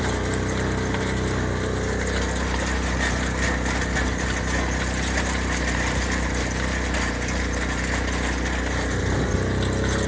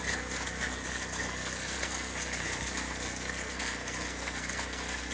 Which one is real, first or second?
first